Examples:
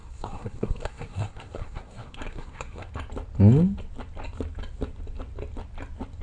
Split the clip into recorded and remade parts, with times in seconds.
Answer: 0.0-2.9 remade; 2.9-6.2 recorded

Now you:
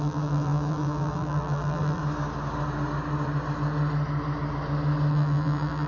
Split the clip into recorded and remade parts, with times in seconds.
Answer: 0.0-2.0 remade; 2.0-5.1 recorded; 5.1-5.9 remade

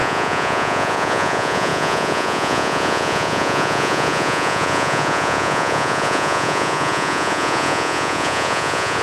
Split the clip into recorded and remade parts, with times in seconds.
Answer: 0.0-9.0 remade

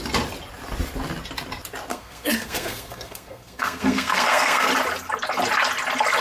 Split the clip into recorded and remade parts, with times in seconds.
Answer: 0.0-1.9 recorded; 1.9-4.7 remade; 4.7-6.2 recorded

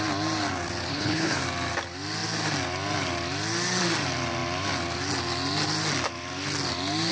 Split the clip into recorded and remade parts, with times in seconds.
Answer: 0.0-0.9 recorded; 0.9-1.4 remade; 1.4-7.1 recorded

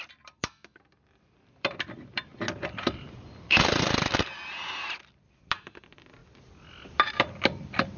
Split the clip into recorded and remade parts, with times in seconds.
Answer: 0.0-2.3 remade; 2.3-5.0 recorded; 5.0-8.0 remade